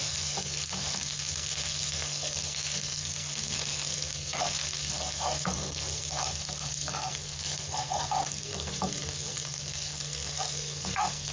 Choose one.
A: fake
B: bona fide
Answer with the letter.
A